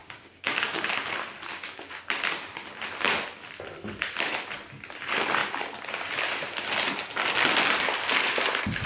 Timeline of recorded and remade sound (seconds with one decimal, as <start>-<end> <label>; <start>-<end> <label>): 0.0-1.1 remade; 1.1-1.5 recorded; 1.5-2.0 remade; 2.0-8.9 recorded